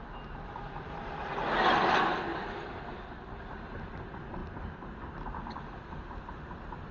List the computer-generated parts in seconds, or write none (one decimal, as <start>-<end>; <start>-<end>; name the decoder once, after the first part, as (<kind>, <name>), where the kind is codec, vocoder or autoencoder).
none